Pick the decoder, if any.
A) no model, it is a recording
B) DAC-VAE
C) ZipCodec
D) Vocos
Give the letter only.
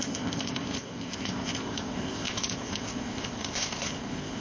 C